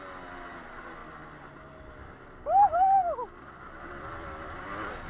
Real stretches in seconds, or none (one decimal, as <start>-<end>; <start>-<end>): 0.0-5.1